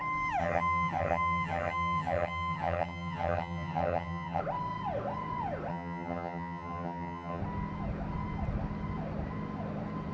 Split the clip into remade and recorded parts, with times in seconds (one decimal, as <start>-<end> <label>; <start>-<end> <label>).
0.0-0.4 recorded; 0.4-4.4 remade; 4.4-5.7 recorded; 5.7-7.4 remade; 7.4-10.1 recorded